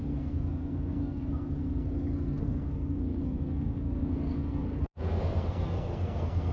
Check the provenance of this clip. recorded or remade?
remade